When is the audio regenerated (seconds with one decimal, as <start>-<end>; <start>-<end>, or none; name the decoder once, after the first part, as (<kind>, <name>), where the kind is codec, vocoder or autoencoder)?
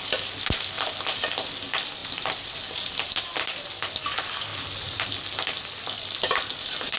2.0-3.2 (vocoder, BigVGAN v2); 4.5-5.1